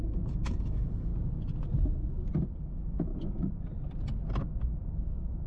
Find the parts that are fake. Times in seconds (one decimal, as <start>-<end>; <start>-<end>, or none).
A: 0.0-1.1; 2.6-3.1